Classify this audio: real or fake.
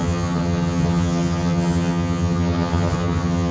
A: fake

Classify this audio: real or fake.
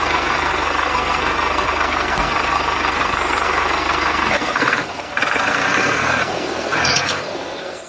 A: fake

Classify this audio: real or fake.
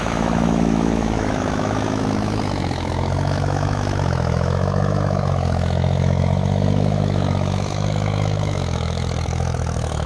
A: fake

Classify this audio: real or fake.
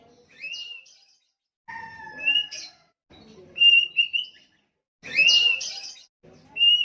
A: real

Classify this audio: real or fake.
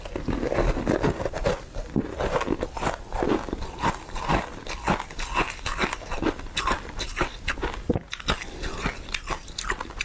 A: real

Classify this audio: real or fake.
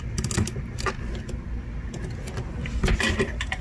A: real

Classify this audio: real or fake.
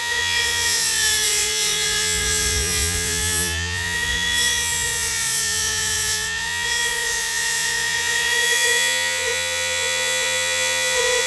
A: fake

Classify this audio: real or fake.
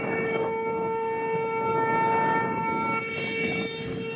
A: fake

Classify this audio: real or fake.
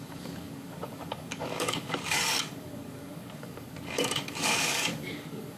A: fake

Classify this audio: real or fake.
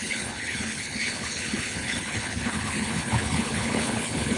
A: fake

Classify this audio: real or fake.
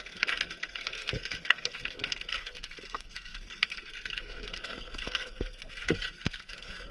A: fake